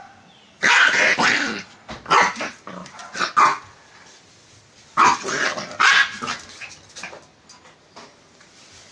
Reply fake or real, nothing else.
real